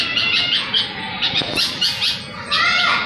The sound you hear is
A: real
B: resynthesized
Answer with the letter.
B